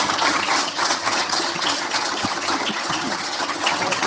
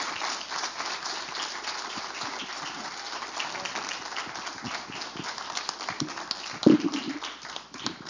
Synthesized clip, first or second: first